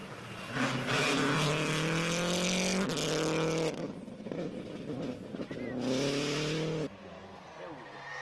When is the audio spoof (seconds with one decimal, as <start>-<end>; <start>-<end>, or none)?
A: none